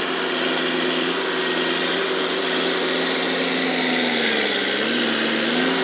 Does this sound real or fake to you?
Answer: real